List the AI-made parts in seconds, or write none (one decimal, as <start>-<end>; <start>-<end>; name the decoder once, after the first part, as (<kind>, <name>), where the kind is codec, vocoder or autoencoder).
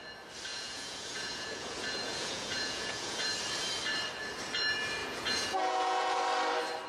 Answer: 0.5-3.3 (vocoder, Vocos); 5.0-6.2